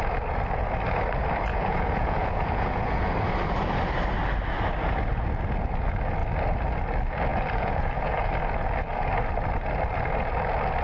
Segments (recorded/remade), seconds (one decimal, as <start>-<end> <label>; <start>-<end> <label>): 0.0-1.5 recorded; 1.5-3.1 remade; 3.1-7.3 recorded; 7.3-8.3 remade; 8.3-10.8 recorded